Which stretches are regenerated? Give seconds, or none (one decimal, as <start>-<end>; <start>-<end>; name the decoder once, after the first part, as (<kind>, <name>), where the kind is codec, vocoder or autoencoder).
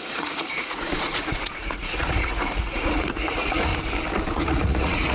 0.0-3.7 (vocoder, Vocos); 4.3-5.1